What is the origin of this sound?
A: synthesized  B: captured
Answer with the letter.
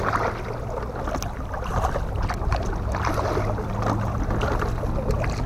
B